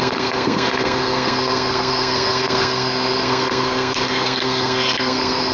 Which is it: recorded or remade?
remade